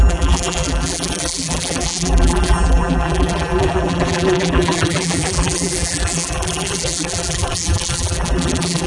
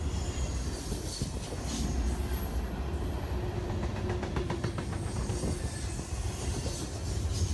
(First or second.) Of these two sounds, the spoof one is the first